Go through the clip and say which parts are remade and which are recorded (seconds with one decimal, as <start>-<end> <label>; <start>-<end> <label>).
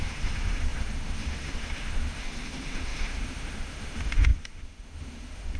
0.0-5.6 remade